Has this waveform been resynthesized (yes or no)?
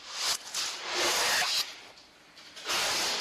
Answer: no